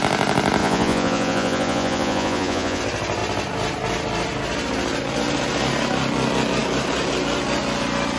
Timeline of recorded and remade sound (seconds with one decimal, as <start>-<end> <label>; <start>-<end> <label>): 0.0-0.6 recorded; 0.6-2.8 remade; 2.8-8.2 recorded